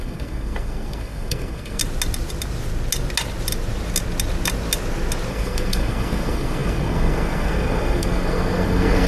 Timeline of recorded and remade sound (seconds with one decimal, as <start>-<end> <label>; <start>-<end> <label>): 0.0-1.8 remade; 1.8-5.3 recorded; 5.3-9.1 remade